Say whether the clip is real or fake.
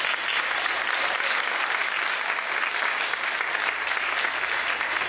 real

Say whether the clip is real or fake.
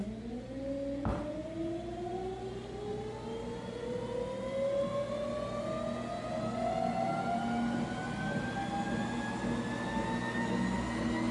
real